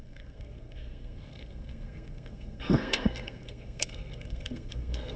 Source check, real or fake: fake